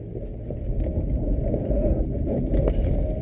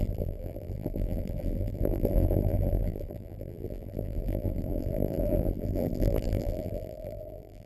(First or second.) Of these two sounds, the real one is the first